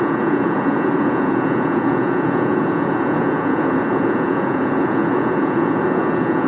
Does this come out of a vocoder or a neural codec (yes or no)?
yes